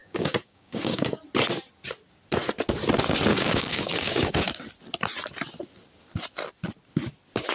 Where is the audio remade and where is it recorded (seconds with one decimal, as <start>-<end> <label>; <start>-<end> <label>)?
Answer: 0.0-1.2 remade; 1.2-3.3 recorded; 3.3-4.5 remade; 4.5-7.5 recorded